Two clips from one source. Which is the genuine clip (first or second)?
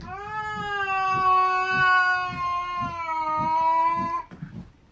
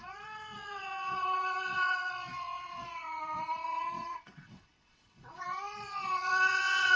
first